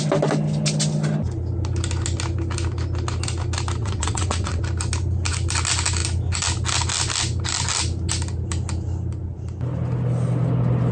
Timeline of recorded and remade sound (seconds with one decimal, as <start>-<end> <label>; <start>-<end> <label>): 0.0-3.8 recorded; 3.8-4.6 remade; 4.6-10.9 recorded